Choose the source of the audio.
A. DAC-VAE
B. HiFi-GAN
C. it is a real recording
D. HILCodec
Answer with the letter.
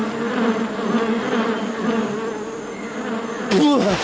C